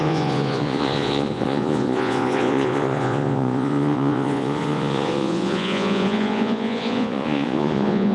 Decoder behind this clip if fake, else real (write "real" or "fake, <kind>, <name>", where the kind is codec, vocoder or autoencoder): fake, vocoder, Vocos